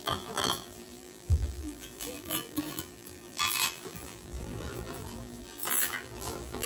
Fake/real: fake